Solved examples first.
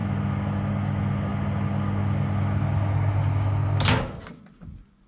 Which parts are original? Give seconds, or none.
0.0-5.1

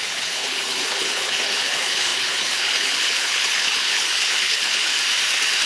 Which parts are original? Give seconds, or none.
4.9-5.7

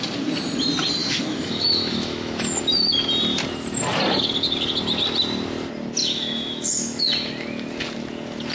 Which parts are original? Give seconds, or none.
0.0-1.0; 2.6-6.0; 7.3-8.5

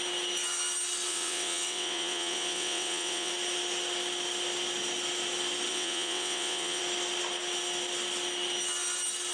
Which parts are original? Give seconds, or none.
0.0-1.1; 3.3-5.7; 6.8-9.3